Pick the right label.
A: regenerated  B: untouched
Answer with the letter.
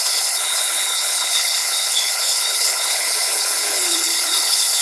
A